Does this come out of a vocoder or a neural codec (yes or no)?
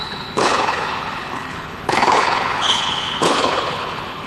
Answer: yes